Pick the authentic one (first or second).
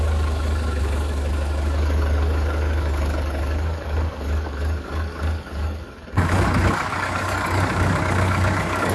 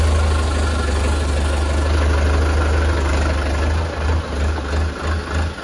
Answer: second